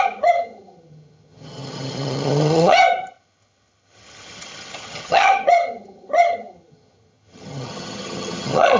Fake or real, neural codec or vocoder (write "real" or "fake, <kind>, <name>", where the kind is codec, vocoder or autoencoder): fake, vocoder, HiFi-GAN